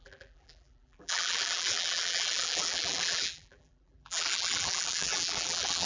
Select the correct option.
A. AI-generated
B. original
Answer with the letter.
A